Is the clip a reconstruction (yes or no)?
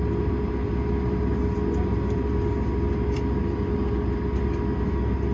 no